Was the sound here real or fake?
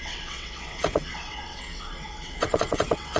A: fake